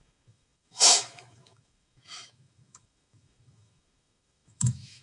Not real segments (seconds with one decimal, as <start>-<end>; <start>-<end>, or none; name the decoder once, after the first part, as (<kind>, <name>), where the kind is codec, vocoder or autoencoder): 0.0-5.0 (autoencoder, DAC-VAE)